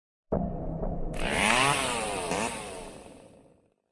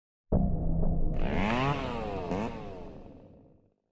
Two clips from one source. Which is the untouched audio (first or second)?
second